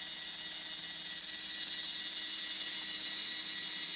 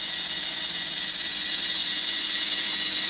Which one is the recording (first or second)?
first